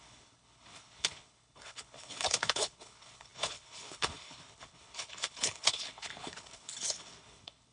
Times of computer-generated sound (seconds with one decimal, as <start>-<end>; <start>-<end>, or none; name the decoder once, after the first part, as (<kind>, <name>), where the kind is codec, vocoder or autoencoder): 0.0-7.7 (codec, HILCodec)